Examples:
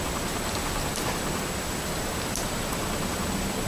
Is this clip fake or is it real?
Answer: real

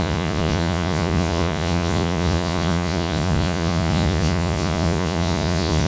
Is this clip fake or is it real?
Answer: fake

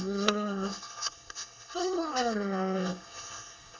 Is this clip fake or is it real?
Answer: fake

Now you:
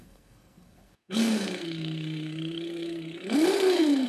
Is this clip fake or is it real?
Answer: fake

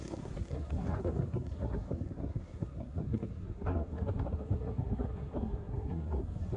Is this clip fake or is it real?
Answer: fake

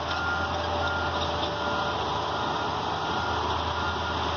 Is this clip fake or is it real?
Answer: real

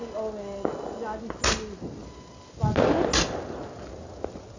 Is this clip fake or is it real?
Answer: real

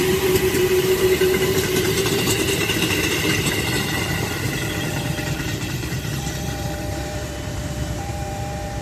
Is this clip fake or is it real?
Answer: fake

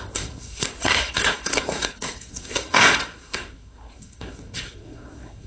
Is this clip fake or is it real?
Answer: fake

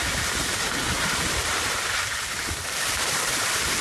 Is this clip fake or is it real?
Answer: fake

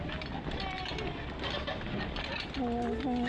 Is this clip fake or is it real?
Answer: real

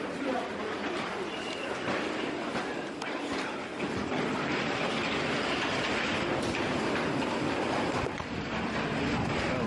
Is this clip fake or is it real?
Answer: fake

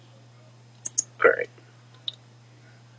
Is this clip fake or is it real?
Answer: real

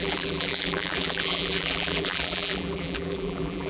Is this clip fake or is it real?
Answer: fake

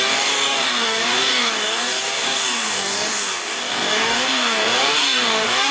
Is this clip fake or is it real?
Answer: fake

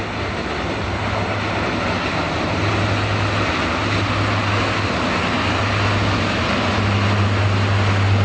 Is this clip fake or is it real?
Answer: real